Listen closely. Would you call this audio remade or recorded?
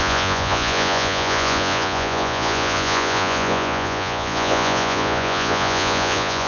remade